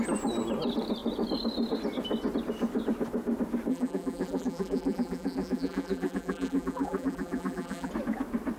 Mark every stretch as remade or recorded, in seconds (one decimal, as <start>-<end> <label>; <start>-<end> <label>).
0.0-3.7 recorded; 3.7-7.9 remade; 7.9-8.6 recorded